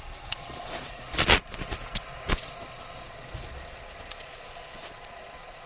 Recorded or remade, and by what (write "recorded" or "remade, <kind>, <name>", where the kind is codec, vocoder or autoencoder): remade, vocoder, Vocos